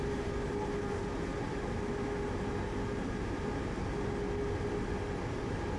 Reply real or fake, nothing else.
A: real